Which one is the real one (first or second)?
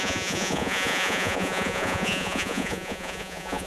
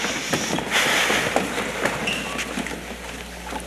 second